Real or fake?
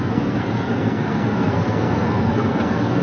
fake